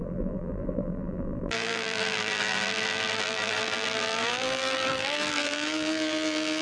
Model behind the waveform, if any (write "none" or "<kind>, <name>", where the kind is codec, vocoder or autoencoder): vocoder, BigVGAN v2